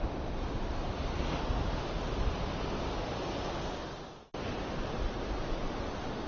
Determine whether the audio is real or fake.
real